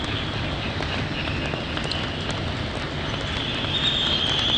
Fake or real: real